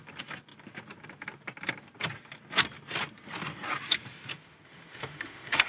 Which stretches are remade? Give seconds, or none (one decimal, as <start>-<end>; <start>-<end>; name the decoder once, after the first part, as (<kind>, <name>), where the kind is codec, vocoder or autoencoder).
4.3-5.7 (autoencoder, DAC-VAE)